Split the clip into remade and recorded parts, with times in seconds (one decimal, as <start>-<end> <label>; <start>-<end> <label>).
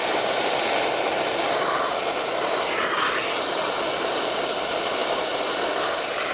0.0-6.3 recorded